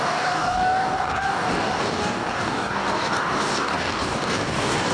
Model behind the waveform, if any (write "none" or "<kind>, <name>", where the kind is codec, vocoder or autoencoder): codec, DAC